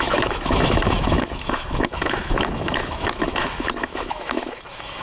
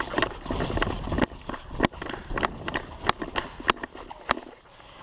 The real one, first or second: second